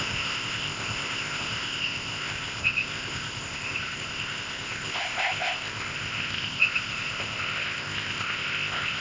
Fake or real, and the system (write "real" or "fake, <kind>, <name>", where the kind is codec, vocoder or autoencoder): fake, codec, ZipCodec